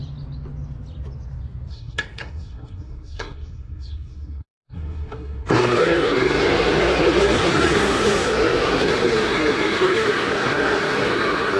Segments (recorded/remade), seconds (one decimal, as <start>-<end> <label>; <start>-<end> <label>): 0.0-1.7 recorded; 1.7-11.6 remade